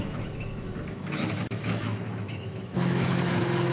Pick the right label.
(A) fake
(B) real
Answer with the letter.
A